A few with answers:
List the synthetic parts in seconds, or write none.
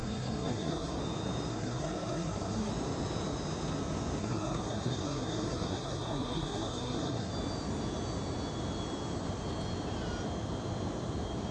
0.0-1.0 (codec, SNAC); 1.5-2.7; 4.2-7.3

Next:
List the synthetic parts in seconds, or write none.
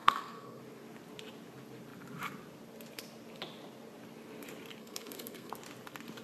0.0-0.6 (codec, SNAC); 4.8-5.5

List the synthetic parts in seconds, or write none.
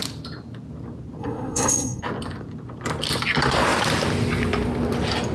1.2-2.0 (codec, SNAC)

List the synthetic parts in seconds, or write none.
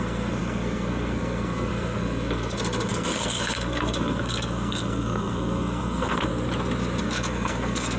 0.0-6.3 (codec, SNAC); 7.0-8.0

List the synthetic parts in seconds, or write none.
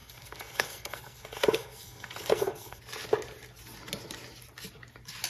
0.0-2.8 (codec, SNAC)